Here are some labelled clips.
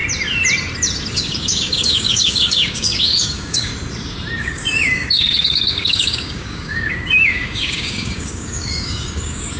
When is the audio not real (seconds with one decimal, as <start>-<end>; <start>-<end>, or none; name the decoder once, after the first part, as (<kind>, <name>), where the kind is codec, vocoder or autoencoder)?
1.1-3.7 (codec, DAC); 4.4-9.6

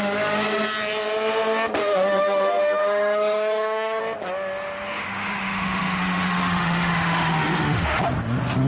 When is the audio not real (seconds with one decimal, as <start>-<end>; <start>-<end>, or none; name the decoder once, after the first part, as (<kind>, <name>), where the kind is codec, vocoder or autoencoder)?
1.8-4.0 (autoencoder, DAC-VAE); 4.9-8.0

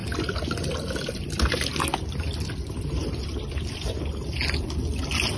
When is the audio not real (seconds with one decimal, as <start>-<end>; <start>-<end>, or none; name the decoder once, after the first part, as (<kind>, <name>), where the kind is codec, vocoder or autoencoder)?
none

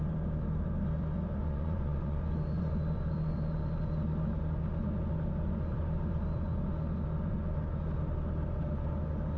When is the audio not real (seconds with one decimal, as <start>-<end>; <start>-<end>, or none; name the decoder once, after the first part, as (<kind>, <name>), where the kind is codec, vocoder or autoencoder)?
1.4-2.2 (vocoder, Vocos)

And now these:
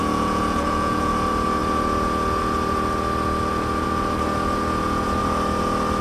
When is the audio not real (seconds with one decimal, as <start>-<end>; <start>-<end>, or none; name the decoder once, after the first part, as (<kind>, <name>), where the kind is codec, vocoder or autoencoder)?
0.0-1.1 (vocoder, Vocos)

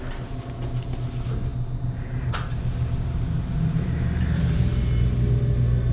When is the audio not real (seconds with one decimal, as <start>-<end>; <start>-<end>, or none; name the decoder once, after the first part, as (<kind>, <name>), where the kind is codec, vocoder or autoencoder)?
none

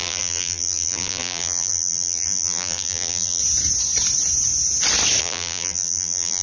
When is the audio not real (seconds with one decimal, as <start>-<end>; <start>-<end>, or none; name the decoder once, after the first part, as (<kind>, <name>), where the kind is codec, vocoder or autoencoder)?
0.0-3.4 (vocoder, BigVGAN v2); 5.2-6.4

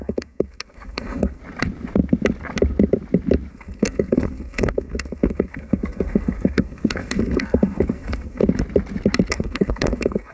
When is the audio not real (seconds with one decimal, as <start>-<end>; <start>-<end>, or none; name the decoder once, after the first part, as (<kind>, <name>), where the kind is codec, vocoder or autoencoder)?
0.0-1.4 (codec, SNAC); 3.5-8.4; 9.3-10.3